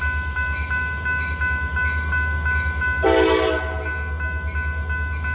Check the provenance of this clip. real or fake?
real